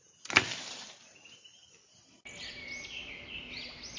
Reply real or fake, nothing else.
real